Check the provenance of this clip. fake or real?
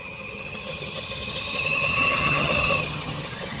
fake